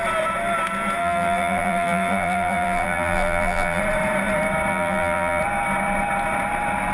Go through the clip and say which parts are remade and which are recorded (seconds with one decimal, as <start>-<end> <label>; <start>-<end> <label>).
0.0-1.0 recorded; 1.0-3.8 remade; 3.8-4.7 recorded; 4.7-5.4 remade; 5.4-6.9 recorded